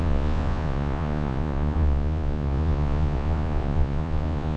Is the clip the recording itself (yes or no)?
no